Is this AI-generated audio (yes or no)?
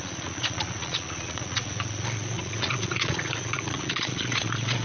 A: yes